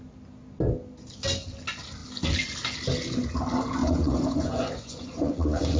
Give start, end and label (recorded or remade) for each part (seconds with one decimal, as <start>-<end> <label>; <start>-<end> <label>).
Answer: 0.0-3.8 recorded; 3.8-5.8 remade